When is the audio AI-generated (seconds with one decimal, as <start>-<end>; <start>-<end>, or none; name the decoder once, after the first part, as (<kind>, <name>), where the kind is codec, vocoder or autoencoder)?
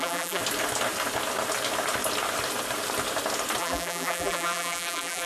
0.0-0.4 (vocoder, BigVGAN v2); 3.6-5.3